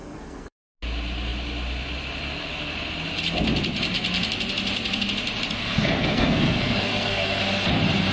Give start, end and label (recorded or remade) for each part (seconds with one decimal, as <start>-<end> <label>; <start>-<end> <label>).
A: 0.0-0.7 remade; 0.7-5.6 recorded; 5.6-7.4 remade; 7.4-8.1 recorded

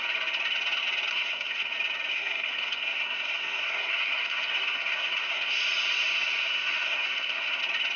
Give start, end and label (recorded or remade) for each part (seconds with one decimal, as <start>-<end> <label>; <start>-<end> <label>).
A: 0.0-1.1 recorded; 1.1-1.7 remade; 1.7-2.1 recorded; 2.1-5.6 remade; 5.6-6.4 recorded; 6.4-7.6 remade; 7.6-8.0 recorded

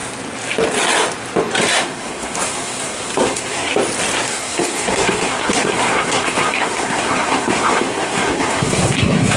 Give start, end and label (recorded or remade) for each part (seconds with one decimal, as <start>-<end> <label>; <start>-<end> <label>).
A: 0.0-1.8 recorded; 1.8-3.7 remade; 3.7-4.3 recorded; 4.3-9.4 remade

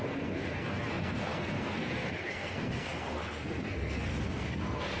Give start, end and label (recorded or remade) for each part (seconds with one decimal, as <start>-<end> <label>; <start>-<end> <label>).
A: 0.0-5.0 remade

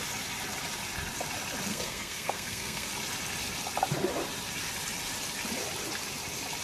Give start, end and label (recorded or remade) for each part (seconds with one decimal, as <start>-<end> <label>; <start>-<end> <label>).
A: 0.0-1.7 recorded; 1.7-2.9 remade; 2.9-6.6 recorded

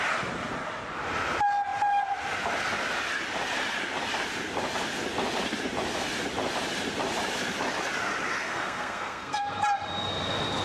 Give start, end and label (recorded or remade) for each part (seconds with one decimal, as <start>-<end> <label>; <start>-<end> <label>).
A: 0.0-8.3 recorded; 8.3-9.6 remade; 9.6-10.6 recorded

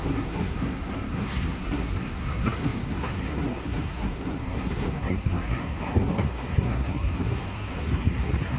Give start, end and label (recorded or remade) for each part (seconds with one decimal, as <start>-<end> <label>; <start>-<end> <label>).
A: 0.0-8.6 remade

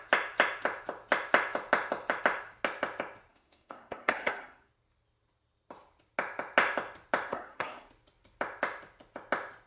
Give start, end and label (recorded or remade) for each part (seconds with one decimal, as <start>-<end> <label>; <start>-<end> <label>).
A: 0.0-3.3 recorded; 3.3-4.7 remade; 4.7-7.3 recorded; 7.3-7.9 remade; 7.9-9.7 recorded